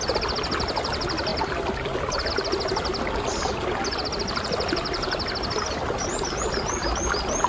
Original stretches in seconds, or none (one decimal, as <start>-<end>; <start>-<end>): 0.0-7.5